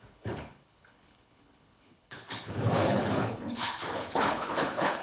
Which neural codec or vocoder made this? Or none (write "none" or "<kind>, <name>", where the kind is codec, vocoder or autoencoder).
codec, HILCodec